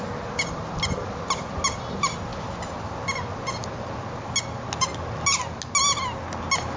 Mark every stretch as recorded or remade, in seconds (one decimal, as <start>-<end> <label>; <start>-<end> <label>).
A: 0.0-6.8 recorded